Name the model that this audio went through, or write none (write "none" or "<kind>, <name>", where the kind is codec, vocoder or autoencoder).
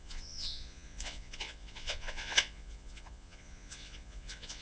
vocoder, Vocos